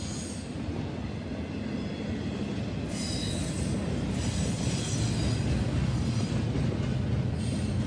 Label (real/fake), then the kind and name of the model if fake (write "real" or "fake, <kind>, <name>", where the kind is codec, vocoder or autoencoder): real